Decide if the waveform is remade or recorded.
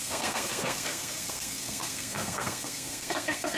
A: remade